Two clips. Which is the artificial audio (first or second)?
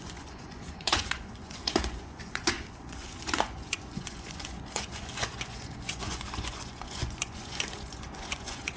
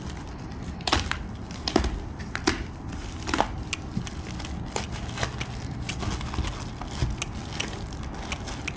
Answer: first